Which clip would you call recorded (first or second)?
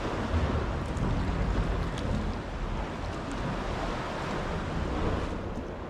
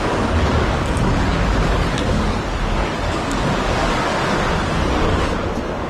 first